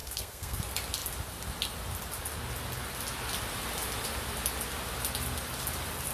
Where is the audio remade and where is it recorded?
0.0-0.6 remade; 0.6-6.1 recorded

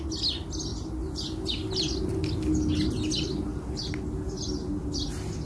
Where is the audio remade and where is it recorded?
0.0-5.4 recorded